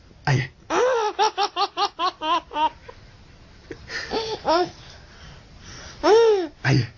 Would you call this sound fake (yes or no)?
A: no